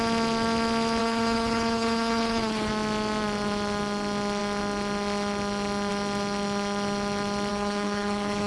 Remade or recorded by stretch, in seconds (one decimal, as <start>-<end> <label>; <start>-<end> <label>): 0.0-1.0 recorded; 1.0-2.7 remade; 2.7-7.5 recorded; 7.5-8.5 remade